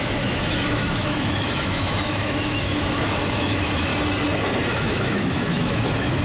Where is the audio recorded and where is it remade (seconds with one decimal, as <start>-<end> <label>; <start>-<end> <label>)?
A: 0.0-3.9 remade; 3.9-4.7 recorded; 4.7-6.2 remade